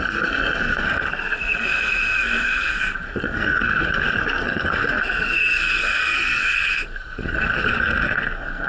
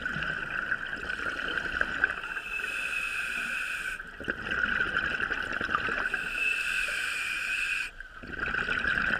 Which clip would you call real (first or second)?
second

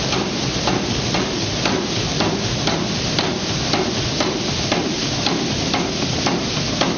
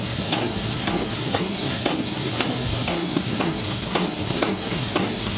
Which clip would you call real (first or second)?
first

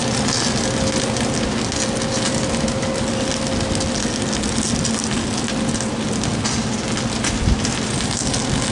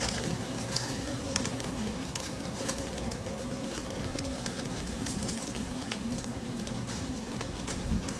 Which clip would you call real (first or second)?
first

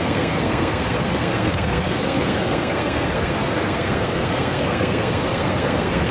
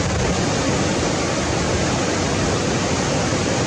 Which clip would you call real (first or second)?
second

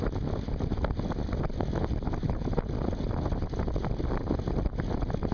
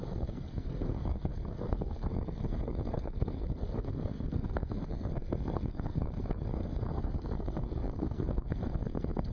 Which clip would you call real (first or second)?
first